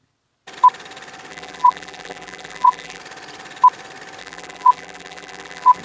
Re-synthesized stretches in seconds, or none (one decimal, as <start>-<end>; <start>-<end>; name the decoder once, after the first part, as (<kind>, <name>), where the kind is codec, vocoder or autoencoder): 1.3-3.0 (vocoder, BigVGAN v2); 4.2-5.8